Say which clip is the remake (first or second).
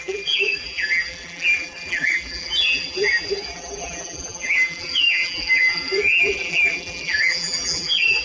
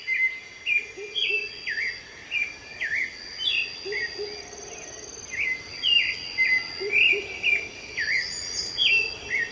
first